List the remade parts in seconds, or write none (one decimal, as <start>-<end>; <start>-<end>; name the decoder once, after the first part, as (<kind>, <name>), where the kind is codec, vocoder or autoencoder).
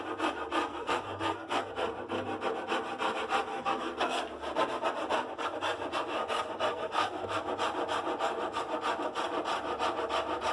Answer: 0.7-1.7 (codec, SNAC); 3.5-4.2; 6.7-7.4